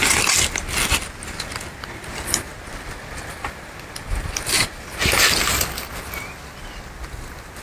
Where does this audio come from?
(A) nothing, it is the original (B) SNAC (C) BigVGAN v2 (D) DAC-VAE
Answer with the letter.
A